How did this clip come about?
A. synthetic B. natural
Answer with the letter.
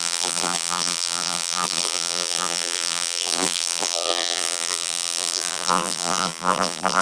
A